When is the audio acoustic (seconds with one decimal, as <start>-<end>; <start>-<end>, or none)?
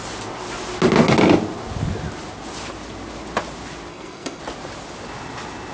0.0-3.9; 4.4-5.7